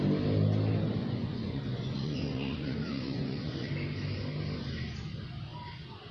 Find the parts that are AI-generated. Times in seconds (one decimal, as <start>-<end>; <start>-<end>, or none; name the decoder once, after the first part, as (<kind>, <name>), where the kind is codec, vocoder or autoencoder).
1.0-3.7 (vocoder, Vocos)